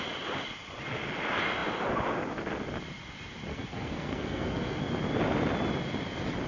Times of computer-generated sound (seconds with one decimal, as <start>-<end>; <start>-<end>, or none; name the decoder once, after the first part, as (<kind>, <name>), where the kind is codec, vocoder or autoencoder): 3.5-4.9 (codec, SNAC)